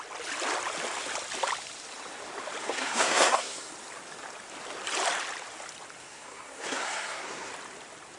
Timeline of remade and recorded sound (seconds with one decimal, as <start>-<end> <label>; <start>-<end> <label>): 0.0-2.6 recorded; 2.6-3.7 remade; 3.7-6.0 recorded; 6.0-7.5 remade; 7.5-8.2 recorded